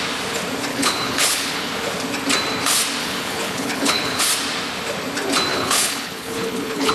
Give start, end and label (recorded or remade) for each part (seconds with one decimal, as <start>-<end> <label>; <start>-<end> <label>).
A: 0.0-0.7 recorded; 0.7-1.7 remade; 1.7-3.0 recorded; 3.0-4.2 remade; 4.2-5.5 recorded; 5.5-6.9 remade